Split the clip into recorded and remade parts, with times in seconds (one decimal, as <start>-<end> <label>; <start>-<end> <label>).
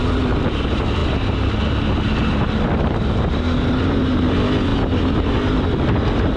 0.0-6.4 recorded